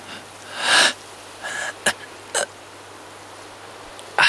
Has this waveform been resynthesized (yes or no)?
no